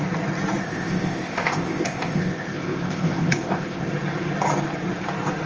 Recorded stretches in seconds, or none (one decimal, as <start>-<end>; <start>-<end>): 0.0-0.6; 3.9-5.5